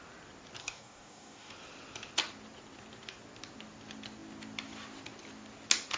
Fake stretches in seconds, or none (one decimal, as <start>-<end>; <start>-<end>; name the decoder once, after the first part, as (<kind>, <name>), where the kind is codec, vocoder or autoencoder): 0.6-1.5 (codec, DAC)